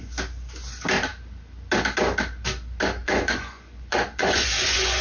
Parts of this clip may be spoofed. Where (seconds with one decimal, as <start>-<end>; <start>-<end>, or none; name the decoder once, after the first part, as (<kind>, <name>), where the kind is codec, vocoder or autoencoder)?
3.0-5.0 (vocoder, Vocos)